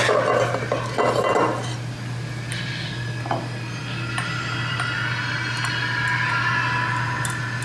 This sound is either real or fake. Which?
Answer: real